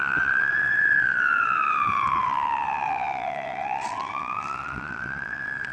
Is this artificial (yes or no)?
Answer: yes